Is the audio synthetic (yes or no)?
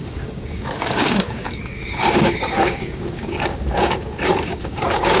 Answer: yes